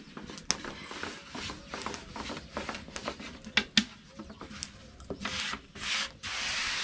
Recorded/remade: recorded